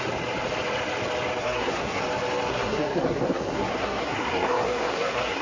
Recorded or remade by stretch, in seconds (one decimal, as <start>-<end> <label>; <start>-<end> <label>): 0.0-1.4 recorded; 1.4-2.0 remade; 2.0-2.5 recorded; 2.5-5.4 remade